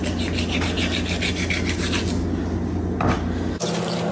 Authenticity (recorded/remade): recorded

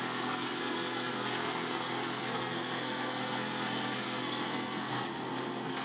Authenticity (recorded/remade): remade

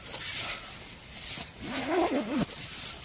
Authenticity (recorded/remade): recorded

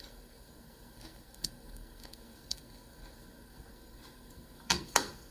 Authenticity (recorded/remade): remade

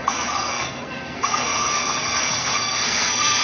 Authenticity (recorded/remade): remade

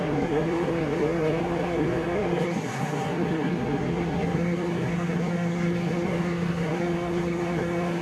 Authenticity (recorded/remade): remade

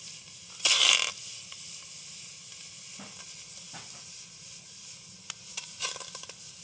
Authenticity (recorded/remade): recorded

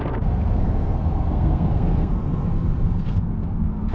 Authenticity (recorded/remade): remade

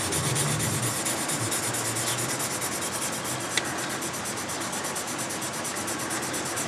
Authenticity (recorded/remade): recorded